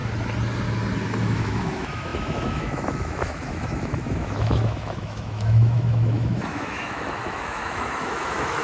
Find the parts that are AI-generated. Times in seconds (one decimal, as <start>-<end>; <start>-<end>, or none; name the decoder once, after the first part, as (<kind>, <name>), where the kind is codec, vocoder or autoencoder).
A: 1.2-8.6 (autoencoder, DAC-VAE)